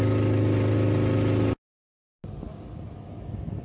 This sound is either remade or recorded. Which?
recorded